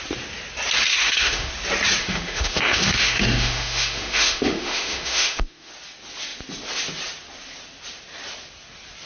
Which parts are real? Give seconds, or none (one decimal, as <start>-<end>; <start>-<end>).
0.0-0.9; 1.5-2.0; 5.7-9.1